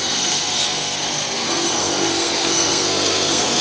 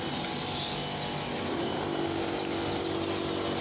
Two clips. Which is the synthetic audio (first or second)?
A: first